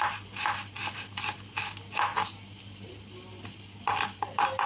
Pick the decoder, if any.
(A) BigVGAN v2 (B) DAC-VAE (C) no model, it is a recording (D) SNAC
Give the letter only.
C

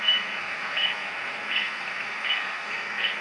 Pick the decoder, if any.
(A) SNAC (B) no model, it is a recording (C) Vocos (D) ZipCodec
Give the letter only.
A